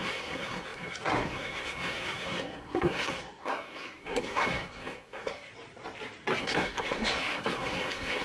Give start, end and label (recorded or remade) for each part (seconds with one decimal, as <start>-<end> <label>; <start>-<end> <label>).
0.0-5.5 remade; 5.5-6.4 recorded; 6.4-8.2 remade